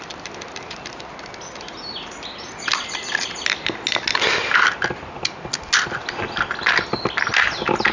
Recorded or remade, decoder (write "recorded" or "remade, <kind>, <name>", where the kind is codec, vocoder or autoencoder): recorded